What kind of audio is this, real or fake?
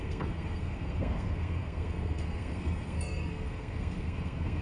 fake